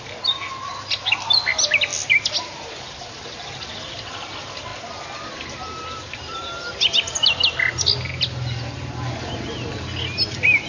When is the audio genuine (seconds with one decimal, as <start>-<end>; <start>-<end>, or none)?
0.0-10.7